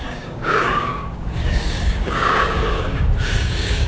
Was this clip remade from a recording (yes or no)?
yes